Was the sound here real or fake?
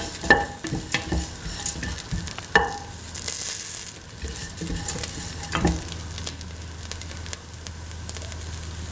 real